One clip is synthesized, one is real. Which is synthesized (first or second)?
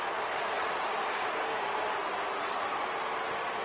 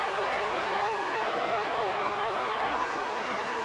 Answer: second